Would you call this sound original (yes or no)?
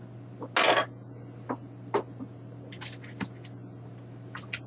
yes